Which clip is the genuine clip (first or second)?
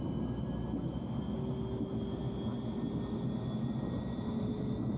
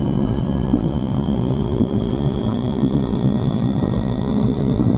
first